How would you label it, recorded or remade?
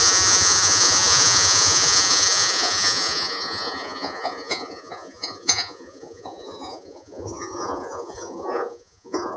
remade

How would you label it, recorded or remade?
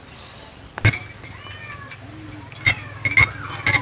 recorded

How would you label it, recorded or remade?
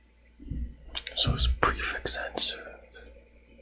recorded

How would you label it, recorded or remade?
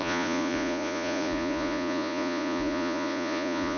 remade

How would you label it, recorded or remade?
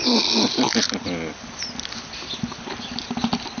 recorded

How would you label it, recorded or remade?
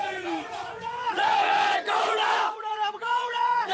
remade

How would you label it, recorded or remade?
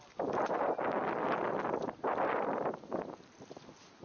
recorded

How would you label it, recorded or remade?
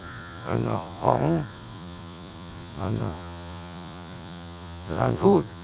remade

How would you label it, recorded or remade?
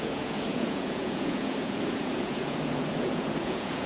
remade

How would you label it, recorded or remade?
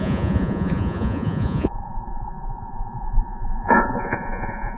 remade